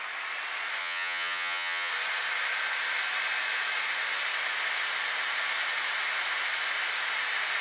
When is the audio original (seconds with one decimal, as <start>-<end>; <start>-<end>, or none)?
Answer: 0.0-0.8; 1.9-7.6